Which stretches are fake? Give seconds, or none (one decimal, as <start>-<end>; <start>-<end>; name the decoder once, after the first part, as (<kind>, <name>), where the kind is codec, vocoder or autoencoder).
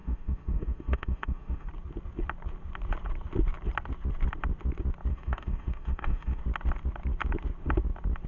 0.0-1.7 (autoencoder, DAC-VAE); 5.1-6.4